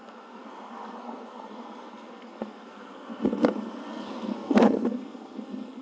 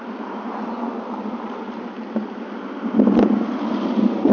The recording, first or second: second